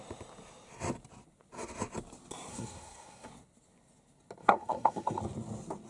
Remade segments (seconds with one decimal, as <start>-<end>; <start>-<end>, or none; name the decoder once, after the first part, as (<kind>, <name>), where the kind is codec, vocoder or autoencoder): 2.5-3.3 (codec, SNAC); 4.4-5.2